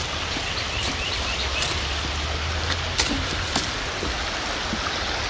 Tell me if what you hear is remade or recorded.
recorded